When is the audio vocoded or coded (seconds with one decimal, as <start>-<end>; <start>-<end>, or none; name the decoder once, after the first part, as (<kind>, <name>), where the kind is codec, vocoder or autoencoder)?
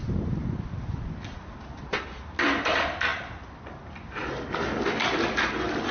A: none